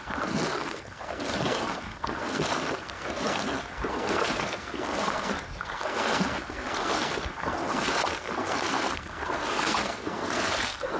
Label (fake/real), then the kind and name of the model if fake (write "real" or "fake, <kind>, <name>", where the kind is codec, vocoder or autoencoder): fake, codec, SNAC